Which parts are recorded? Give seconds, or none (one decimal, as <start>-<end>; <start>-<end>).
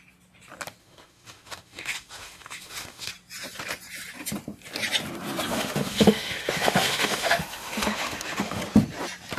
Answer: 0.0-0.8; 3.1-5.5; 8.6-9.4